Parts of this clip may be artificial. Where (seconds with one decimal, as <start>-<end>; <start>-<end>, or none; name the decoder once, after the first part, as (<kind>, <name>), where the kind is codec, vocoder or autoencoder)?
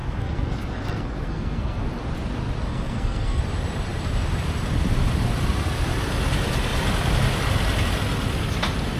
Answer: 0.0-1.8 (codec, SNAC); 2.7-3.4